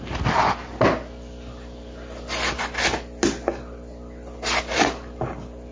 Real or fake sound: real